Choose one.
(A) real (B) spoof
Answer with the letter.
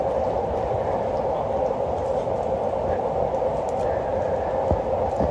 A